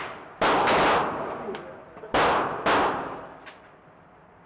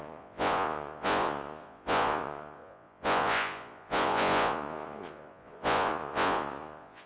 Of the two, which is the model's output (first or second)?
second